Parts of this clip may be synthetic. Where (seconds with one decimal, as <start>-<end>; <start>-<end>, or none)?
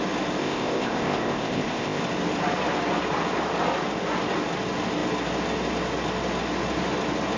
0.4-2.0